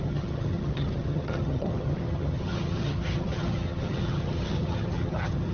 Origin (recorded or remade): remade